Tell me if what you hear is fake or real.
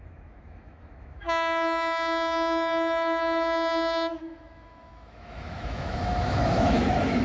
fake